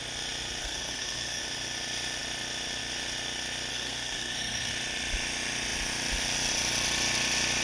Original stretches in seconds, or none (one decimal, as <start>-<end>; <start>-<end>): 0.0-0.6; 1.4-3.7; 4.7-7.6